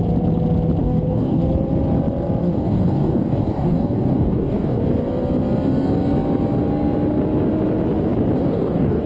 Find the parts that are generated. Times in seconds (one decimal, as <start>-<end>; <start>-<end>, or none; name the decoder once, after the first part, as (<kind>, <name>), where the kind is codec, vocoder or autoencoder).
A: 0.8-1.4 (codec, DAC); 2.4-4.8; 8.4-9.1